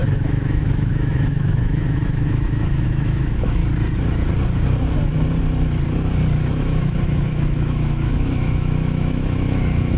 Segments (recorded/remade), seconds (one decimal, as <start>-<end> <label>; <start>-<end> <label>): 0.0-3.6 remade; 3.6-6.6 recorded; 6.6-10.0 remade